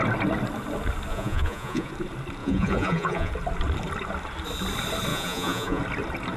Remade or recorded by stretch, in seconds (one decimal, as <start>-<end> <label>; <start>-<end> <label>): 0.0-1.1 recorded; 1.1-1.9 remade; 1.9-2.4 recorded; 2.4-3.3 remade; 3.3-5.1 recorded; 5.1-5.8 remade; 5.8-6.4 recorded